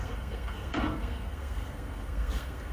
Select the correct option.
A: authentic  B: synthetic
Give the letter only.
B